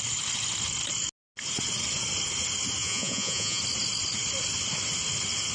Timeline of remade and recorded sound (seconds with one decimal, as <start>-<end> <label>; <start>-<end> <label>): 0.0-2.8 recorded; 2.8-3.6 remade; 3.6-5.5 recorded